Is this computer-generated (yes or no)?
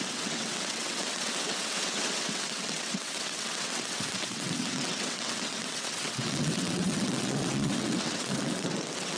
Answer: yes